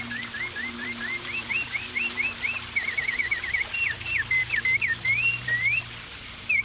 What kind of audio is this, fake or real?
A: fake